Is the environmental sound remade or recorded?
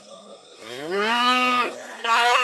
remade